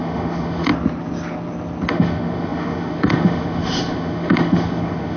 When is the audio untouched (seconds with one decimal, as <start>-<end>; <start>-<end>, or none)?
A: 0.7-1.9